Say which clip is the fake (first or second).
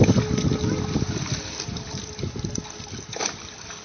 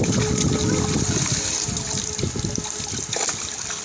second